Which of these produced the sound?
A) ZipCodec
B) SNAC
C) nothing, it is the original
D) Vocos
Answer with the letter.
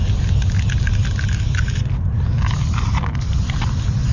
C